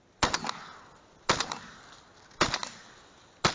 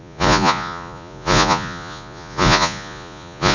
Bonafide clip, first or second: first